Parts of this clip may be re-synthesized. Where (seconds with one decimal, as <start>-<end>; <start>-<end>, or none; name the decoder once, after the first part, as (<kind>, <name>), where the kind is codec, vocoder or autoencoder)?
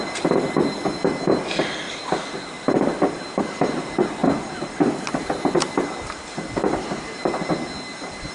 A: none